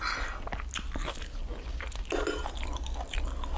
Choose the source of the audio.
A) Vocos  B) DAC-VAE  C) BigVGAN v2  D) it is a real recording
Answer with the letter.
D